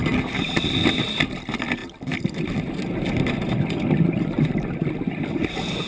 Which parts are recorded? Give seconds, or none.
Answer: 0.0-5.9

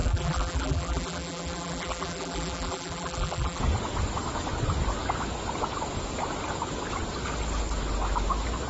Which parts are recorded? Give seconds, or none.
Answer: 3.6-8.7

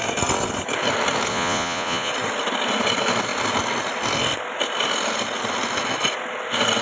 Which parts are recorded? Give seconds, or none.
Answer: 0.0-1.3; 2.1-6.8

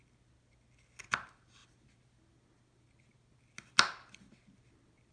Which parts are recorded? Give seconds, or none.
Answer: 0.0-5.1